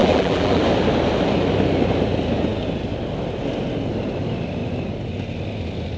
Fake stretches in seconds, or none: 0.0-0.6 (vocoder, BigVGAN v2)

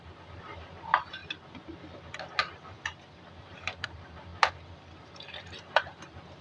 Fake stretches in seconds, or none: 0.0-1.2 (vocoder, BigVGAN v2); 3.4-4.3; 5.0-6.4